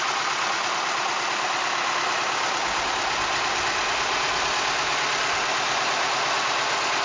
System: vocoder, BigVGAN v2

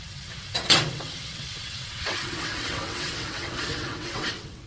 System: vocoder, WaveNeXt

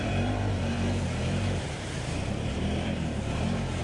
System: vocoder, BigVGAN v2